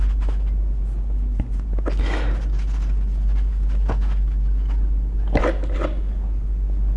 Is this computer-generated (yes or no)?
no